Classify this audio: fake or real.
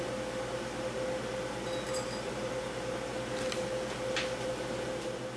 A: real